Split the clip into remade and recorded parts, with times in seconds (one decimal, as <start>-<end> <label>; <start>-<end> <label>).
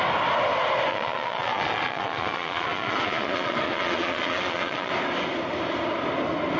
0.0-0.9 recorded; 0.9-4.9 remade; 4.9-6.6 recorded